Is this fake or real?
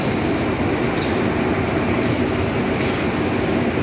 real